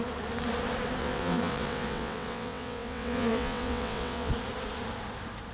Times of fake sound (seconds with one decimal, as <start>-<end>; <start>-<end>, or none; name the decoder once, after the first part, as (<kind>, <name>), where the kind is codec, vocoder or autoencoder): 1.0-4.3 (vocoder, WaveNeXt)